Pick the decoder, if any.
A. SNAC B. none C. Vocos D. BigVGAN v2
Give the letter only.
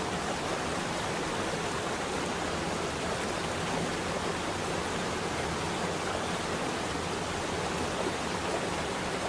B